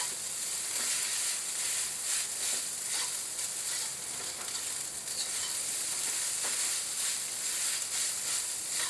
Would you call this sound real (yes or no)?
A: yes